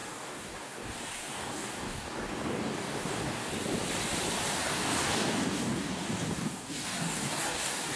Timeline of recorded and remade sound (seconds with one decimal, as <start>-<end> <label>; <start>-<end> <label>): 0.0-3.5 remade; 3.5-4.5 recorded; 4.5-8.0 remade